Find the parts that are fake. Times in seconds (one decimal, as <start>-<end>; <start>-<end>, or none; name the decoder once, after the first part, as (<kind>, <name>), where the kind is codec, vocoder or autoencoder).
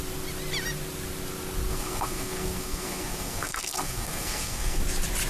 1.7-4.8 (codec, SNAC)